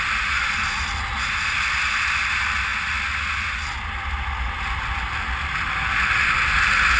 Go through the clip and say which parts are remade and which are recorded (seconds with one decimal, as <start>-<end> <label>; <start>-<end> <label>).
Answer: 0.0-7.0 recorded